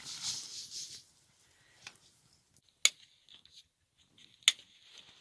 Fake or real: real